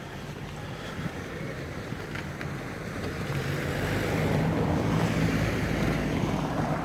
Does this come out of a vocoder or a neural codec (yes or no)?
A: yes